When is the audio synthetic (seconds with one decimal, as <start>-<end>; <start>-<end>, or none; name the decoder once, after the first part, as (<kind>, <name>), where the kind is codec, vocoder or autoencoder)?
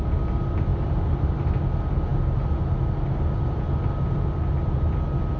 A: none